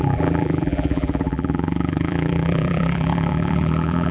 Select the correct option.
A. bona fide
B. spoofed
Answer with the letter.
B